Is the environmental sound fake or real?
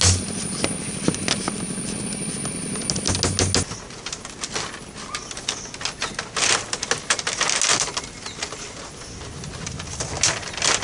real